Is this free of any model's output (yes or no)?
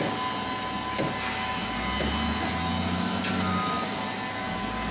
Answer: yes